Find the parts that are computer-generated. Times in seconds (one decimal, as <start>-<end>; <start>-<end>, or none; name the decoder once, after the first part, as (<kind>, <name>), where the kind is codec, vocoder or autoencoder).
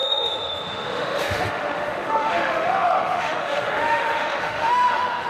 0.0-5.3 (autoencoder, DAC-VAE)